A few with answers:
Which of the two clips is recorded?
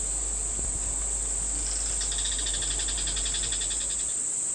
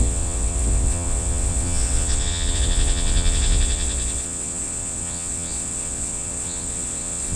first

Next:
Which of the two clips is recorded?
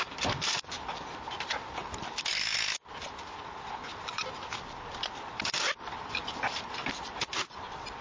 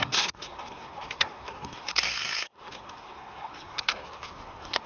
first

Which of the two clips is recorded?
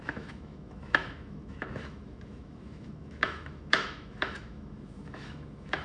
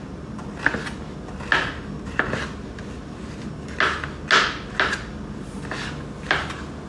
second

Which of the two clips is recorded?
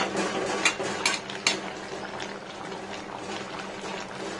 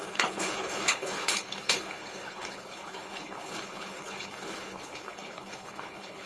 first